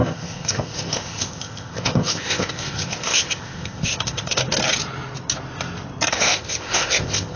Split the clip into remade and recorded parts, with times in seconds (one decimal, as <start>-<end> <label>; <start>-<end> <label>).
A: 0.0-4.4 remade; 4.4-6.1 recorded; 6.1-7.4 remade